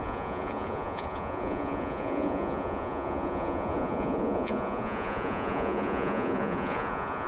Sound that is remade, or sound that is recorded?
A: remade